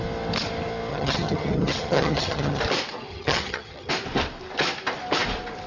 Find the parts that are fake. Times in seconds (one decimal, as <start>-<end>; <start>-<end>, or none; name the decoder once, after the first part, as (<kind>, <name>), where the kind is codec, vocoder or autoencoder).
0.9-2.6 (vocoder, HiFi-GAN); 3.1-3.9